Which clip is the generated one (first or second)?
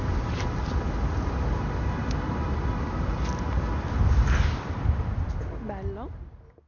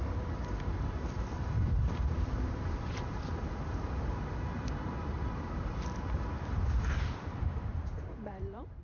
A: second